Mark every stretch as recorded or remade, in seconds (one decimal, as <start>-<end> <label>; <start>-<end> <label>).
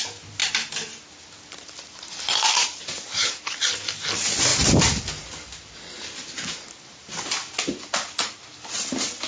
0.0-9.3 recorded